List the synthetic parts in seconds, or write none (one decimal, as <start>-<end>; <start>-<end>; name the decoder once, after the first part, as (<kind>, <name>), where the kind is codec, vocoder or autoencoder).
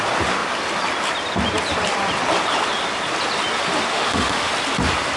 3.9-4.5 (autoencoder, DAC-VAE)